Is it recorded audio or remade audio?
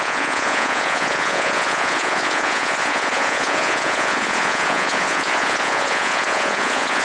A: remade